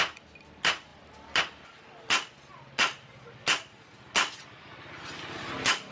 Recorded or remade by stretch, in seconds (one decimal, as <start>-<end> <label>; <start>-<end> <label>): 0.0-5.9 recorded